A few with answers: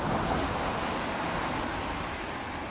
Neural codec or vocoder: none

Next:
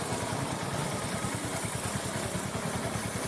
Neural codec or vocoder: vocoder, BigVGAN v2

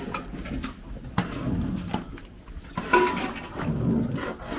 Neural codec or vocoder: none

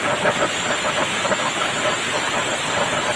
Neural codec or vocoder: none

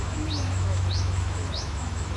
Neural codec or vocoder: autoencoder, DAC-VAE